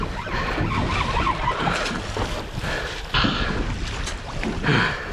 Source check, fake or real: real